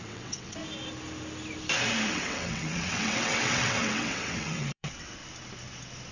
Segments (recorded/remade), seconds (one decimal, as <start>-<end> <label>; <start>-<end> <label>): 0.0-0.6 remade; 0.6-2.1 recorded; 2.1-5.2 remade; 5.2-6.1 recorded